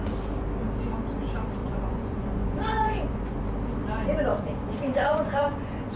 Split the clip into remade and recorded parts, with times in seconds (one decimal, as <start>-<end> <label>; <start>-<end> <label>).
0.0-1.6 recorded; 1.6-3.4 remade; 3.4-4.3 recorded; 4.3-6.0 remade